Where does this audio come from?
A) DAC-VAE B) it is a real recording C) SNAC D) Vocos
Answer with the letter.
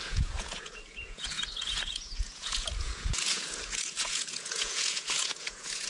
D